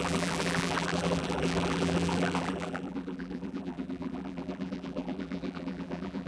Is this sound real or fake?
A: fake